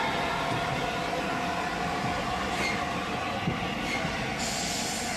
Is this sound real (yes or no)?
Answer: yes